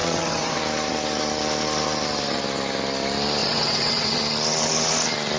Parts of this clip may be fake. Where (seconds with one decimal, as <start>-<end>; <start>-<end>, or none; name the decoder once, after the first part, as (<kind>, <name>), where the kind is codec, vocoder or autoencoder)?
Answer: 0.0-0.6 (vocoder, WaveNeXt); 3.4-4.2